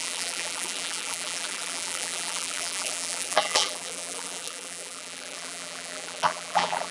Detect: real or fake fake